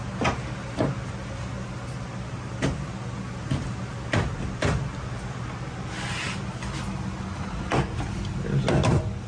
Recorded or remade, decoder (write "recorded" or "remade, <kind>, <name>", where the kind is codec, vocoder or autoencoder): recorded